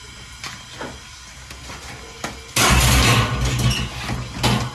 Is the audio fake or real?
real